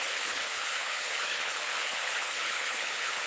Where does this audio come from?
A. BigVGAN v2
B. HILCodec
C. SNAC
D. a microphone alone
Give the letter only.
B